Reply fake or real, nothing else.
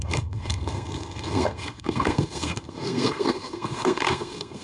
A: fake